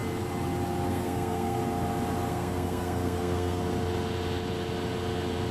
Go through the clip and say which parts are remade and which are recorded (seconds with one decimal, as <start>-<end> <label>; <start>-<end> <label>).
0.0-0.9 recorded; 0.9-1.6 remade; 1.6-2.3 recorded; 2.3-3.6 remade; 3.6-5.5 recorded